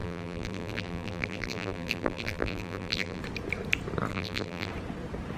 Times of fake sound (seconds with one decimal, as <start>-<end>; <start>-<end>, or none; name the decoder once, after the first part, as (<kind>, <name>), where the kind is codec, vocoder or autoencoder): 0.0-3.2 (vocoder, BigVGAN v2); 4.1-4.7